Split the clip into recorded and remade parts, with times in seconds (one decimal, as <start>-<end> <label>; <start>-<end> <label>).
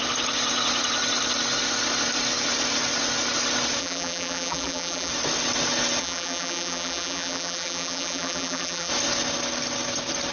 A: 0.0-3.8 recorded; 3.8-5.1 remade; 5.1-6.0 recorded; 6.0-8.9 remade; 8.9-10.3 recorded